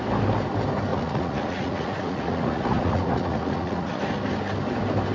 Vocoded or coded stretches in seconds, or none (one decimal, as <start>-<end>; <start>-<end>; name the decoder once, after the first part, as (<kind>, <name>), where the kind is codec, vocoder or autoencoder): 0.9-4.0 (vocoder, Vocos)